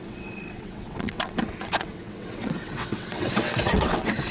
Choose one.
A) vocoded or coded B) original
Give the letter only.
A